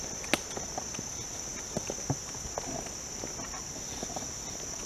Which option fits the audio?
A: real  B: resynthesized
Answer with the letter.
A